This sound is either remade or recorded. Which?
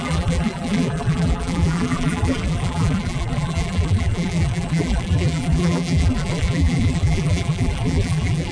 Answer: remade